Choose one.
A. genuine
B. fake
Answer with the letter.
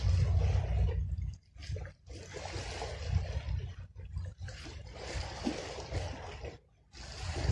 A